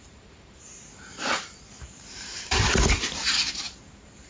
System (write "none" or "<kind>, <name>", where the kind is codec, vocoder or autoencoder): vocoder, BigVGAN v2